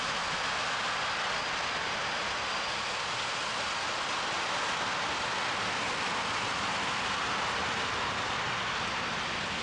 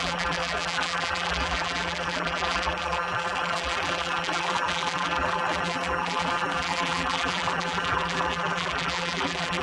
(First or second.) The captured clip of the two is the first